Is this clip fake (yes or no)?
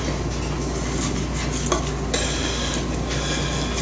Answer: no